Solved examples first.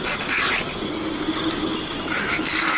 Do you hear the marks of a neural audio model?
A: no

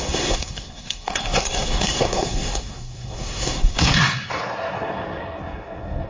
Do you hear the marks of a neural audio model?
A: yes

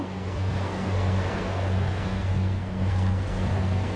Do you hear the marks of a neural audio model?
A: yes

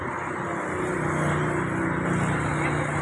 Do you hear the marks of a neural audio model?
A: no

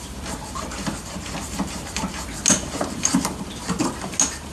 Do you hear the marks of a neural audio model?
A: no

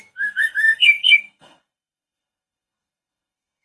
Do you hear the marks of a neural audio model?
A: yes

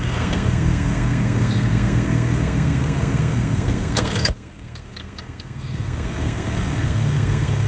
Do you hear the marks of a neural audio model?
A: yes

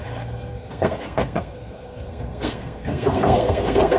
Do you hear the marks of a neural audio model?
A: yes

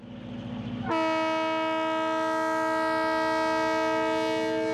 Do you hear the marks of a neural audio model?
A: no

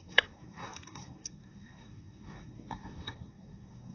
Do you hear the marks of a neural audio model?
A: yes